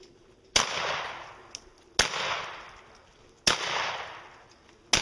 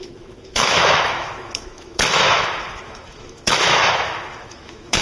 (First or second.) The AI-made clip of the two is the second